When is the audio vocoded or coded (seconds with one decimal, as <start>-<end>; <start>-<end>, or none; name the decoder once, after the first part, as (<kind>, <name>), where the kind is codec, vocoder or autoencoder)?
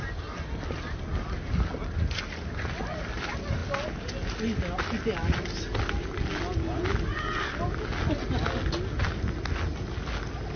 none